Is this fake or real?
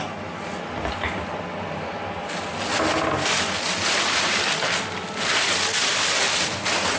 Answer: real